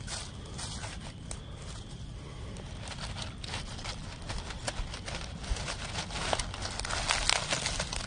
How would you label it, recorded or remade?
recorded